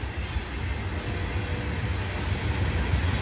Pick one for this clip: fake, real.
real